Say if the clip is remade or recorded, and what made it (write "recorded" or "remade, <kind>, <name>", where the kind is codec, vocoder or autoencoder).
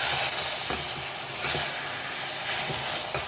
recorded